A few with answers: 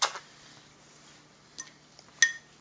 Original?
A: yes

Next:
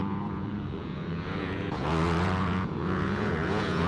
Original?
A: no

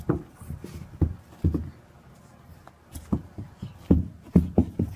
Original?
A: yes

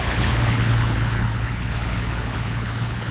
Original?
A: no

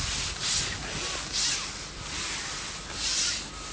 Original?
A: yes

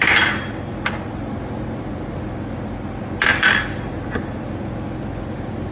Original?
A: yes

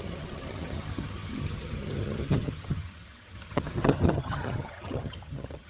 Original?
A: no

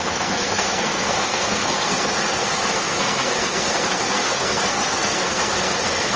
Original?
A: no